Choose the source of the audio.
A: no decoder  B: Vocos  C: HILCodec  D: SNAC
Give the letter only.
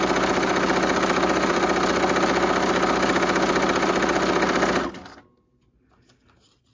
A